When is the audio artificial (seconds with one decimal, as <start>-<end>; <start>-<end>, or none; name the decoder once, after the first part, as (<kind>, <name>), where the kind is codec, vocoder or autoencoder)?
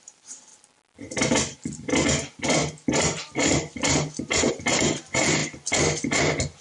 0.0-0.5 (vocoder, BigVGAN v2); 4.5-5.4